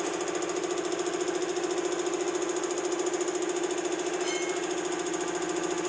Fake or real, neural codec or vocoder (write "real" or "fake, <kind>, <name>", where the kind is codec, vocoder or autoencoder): real